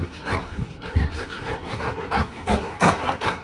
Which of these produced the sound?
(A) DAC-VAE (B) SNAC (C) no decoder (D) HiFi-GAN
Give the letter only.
B